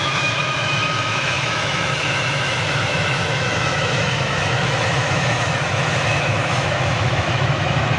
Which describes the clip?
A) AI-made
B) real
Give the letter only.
A